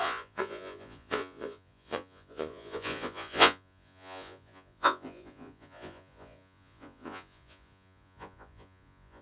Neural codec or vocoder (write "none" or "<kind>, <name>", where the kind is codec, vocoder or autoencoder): vocoder, Vocos